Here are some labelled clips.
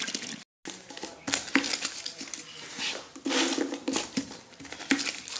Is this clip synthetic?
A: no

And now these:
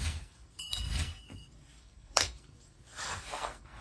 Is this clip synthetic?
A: yes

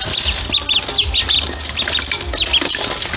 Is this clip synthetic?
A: no